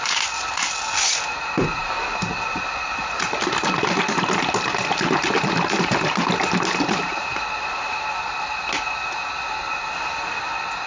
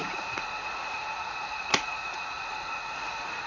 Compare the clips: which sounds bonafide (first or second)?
first